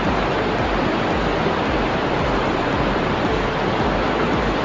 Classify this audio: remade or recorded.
recorded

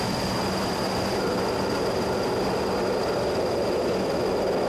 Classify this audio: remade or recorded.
recorded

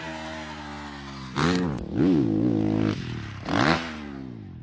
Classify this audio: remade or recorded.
recorded